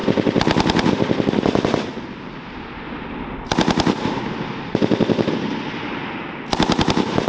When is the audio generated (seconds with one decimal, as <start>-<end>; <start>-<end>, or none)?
none